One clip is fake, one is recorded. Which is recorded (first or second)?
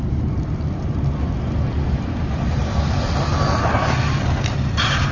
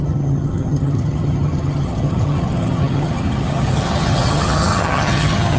first